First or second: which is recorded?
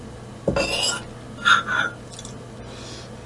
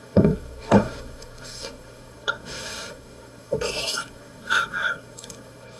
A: first